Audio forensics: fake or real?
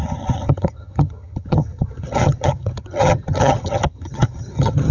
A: fake